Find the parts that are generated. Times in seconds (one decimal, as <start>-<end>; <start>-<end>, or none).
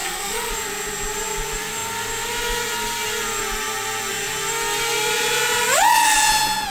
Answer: 0.0-0.5